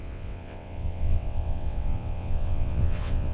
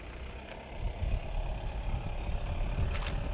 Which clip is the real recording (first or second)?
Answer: second